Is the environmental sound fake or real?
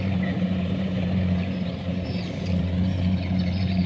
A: fake